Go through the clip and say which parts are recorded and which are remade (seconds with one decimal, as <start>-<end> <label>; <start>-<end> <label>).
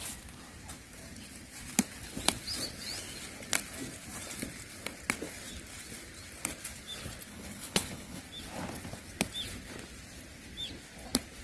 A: 0.0-7.3 recorded; 7.3-8.2 remade; 8.2-11.4 recorded